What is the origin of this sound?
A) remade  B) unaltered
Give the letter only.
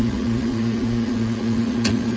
A